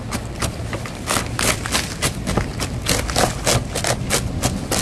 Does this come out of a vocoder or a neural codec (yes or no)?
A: no